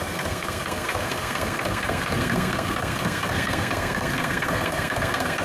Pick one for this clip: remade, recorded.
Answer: remade